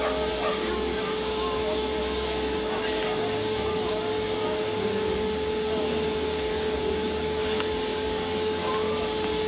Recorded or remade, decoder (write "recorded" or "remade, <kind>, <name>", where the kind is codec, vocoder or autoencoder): remade, codec, DAC